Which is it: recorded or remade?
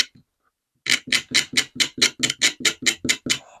recorded